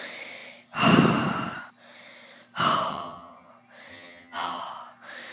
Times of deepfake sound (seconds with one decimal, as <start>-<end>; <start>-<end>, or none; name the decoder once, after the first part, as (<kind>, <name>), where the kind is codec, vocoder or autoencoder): 2.9-3.5 (vocoder, HiFi-GAN); 3.9-4.6